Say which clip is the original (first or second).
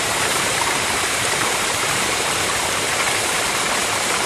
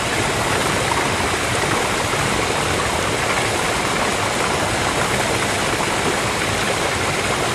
second